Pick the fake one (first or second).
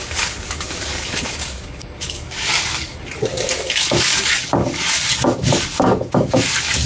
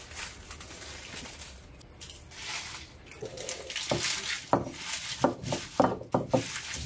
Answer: first